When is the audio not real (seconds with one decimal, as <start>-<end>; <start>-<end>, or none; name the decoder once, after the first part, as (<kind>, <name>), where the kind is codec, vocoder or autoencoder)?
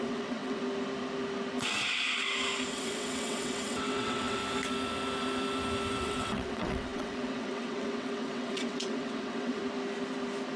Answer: 0.0-0.6 (vocoder, WaveNeXt); 2.7-4.4; 6.0-9.6